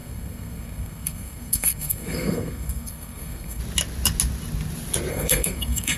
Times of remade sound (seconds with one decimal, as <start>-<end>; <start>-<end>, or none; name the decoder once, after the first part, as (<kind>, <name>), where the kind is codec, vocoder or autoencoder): 0.0-3.6 (codec, SNAC); 5.1-6.0